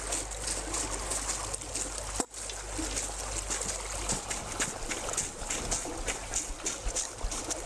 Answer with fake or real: real